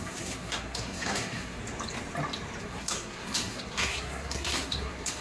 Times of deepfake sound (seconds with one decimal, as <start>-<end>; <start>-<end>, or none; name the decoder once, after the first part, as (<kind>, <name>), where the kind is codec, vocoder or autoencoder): 0.0-1.6 (codec, SNAC); 2.6-5.2